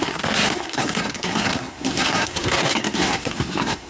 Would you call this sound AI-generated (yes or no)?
yes